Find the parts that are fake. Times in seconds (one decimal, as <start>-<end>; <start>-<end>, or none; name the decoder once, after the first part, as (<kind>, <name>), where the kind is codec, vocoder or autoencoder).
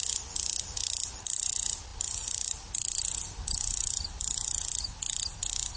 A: none